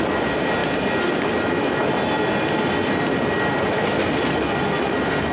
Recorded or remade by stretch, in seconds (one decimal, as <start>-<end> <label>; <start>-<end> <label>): 0.0-5.3 recorded